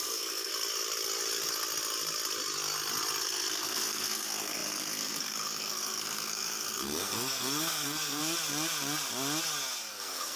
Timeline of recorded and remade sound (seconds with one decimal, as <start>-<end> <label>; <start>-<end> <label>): 0.0-0.5 remade; 0.5-3.2 recorded; 3.2-8.2 remade; 8.2-9.9 recorded; 9.9-10.4 remade